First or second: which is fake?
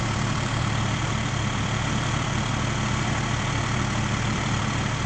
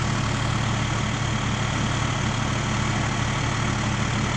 first